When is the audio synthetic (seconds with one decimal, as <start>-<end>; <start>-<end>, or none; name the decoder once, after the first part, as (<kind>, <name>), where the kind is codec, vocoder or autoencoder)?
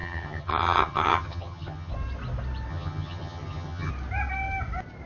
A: 0.0-1.9 (vocoder, HiFi-GAN); 2.7-3.9